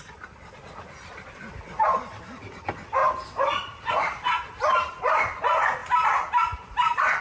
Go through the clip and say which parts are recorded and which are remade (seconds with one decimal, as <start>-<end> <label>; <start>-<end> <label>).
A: 0.0-7.2 recorded